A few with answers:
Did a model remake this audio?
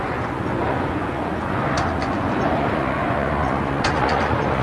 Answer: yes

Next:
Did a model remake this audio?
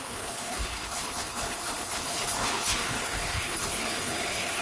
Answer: yes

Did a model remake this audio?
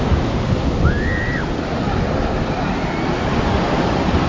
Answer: no